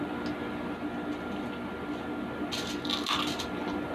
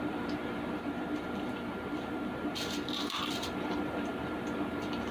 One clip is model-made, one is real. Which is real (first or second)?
first